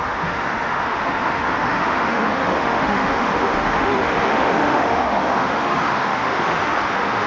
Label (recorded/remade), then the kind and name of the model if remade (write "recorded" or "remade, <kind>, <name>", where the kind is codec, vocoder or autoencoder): remade, autoencoder, DAC-VAE